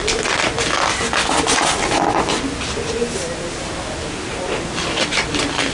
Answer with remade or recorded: recorded